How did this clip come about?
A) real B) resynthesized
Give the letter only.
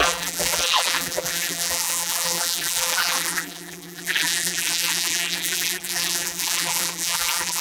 B